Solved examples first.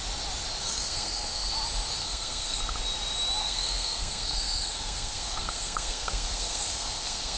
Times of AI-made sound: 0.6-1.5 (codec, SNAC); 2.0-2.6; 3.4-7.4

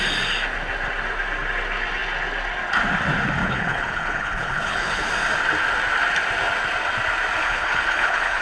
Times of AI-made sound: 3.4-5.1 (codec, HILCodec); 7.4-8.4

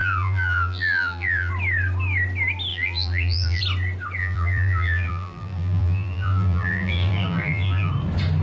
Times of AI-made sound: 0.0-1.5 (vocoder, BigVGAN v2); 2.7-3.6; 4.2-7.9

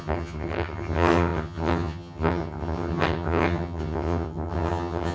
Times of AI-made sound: 0.0-5.1 (vocoder, HiFi-GAN)